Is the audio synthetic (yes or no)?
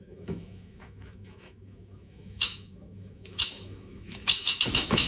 yes